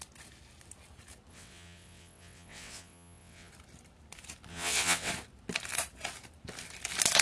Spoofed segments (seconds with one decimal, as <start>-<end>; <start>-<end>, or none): 1.3-3.5; 4.5-5.1